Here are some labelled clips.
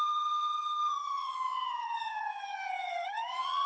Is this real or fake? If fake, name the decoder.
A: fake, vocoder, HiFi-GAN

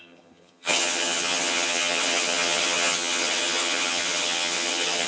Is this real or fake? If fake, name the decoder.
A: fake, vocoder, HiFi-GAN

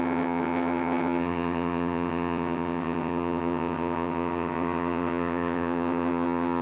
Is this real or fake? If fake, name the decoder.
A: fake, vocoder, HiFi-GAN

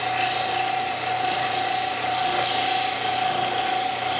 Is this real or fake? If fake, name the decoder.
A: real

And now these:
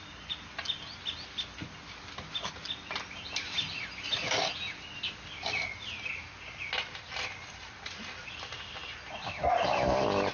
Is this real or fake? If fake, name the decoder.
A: real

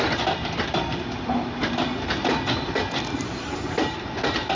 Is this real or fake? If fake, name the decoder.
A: real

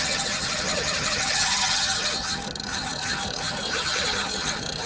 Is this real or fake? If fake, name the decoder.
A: fake, vocoder, HiFi-GAN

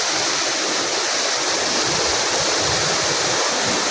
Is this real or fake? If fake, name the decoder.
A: real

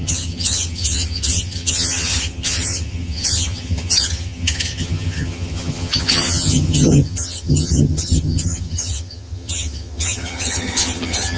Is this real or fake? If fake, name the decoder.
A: fake, vocoder, HiFi-GAN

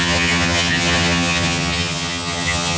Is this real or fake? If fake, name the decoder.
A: fake, vocoder, HiFi-GAN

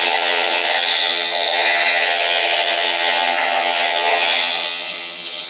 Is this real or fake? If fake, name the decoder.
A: fake, vocoder, HiFi-GAN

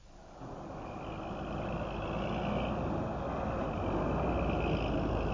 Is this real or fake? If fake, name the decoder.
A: real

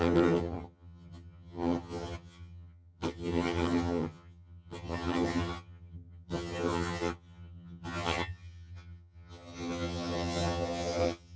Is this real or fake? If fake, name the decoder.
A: fake, vocoder, HiFi-GAN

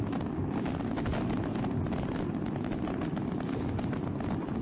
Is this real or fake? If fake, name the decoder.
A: real